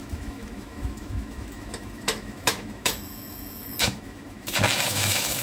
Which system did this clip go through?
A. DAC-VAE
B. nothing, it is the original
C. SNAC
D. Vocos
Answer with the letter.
A